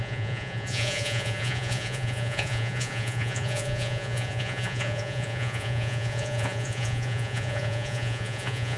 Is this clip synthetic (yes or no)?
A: yes